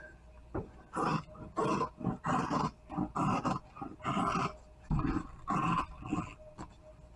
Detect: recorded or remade recorded